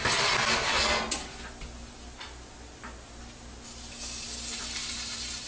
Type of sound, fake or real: real